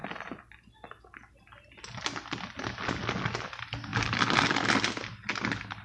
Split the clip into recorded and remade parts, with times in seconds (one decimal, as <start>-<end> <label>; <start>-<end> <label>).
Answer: 0.0-5.8 recorded